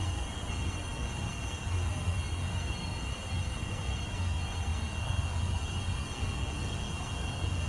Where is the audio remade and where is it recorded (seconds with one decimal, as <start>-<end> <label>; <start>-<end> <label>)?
0.0-7.7 remade